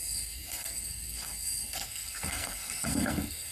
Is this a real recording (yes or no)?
no